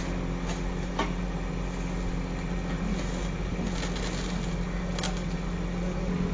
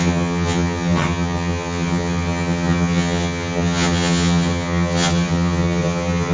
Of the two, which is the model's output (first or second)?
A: second